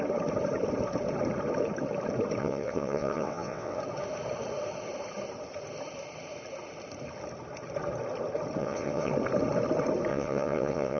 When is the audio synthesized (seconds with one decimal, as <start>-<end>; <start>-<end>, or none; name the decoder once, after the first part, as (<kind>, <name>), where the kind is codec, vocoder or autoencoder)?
2.4-3.8 (vocoder, WaveNeXt); 8.6-9.1; 10.1-11.0